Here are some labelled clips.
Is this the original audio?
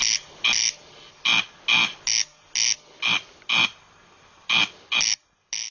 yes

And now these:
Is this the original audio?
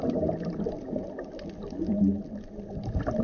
yes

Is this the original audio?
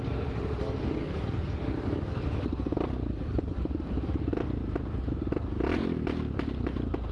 yes